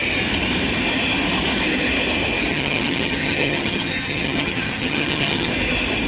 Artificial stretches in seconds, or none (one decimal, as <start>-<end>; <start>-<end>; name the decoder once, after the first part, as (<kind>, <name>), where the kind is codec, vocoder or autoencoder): 2.5-5.5 (vocoder, HiFi-GAN)